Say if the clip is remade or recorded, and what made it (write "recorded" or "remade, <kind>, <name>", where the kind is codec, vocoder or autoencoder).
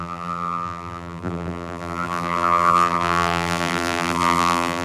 remade, vocoder, BigVGAN v2